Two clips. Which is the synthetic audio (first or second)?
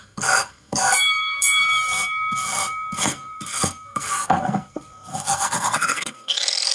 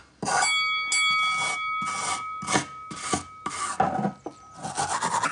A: first